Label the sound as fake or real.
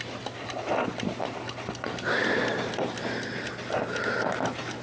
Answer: real